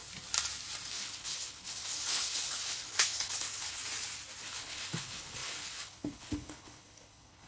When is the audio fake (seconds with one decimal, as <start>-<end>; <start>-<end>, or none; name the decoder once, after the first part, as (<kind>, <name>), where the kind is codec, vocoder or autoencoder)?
0.9-3.8 (codec, HILCodec); 4.4-7.5